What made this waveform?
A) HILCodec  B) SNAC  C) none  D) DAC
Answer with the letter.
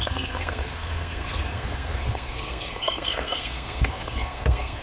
B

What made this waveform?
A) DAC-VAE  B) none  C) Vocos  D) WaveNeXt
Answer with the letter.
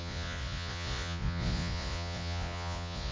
C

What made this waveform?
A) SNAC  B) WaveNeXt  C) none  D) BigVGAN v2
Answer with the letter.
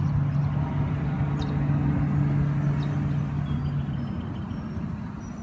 C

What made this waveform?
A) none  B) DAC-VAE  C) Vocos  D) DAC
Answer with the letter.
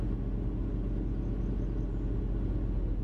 A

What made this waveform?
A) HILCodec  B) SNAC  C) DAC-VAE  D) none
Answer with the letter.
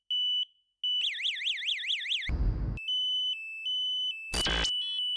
D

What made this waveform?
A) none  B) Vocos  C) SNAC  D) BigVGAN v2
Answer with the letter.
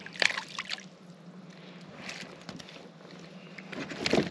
A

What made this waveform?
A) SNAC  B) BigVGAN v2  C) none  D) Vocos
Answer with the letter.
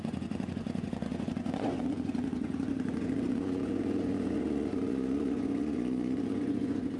D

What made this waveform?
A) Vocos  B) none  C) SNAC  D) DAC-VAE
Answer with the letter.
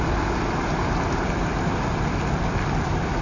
B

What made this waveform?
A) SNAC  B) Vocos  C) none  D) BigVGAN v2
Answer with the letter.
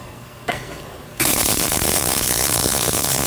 A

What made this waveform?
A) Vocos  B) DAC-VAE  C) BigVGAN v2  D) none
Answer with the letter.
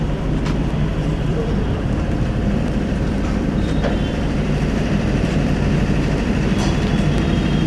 C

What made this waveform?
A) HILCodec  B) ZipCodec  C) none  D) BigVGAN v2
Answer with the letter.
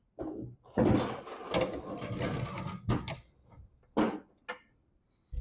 C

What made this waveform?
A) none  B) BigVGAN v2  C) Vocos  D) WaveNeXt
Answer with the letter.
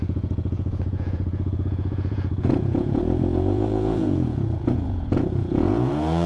C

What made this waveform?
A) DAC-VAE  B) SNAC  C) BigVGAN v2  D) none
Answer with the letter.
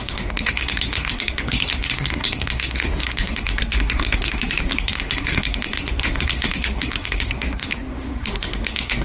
B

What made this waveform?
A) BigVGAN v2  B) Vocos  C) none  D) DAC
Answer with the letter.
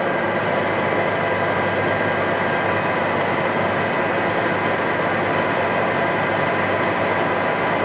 C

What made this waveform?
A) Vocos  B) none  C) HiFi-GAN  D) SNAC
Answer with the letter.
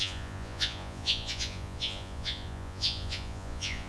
A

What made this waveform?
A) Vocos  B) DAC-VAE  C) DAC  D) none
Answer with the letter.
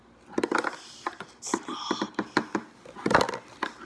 D